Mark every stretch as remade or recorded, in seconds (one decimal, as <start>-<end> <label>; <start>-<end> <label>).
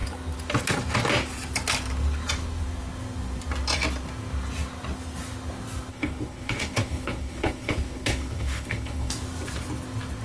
0.0-5.9 recorded; 5.9-9.1 remade; 9.1-10.2 recorded